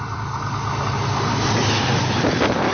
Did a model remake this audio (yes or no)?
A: no